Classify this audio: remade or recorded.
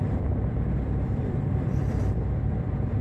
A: remade